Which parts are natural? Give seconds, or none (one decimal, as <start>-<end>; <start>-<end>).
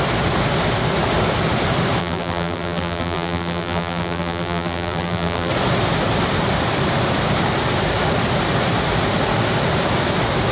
0.0-2.0; 5.5-10.5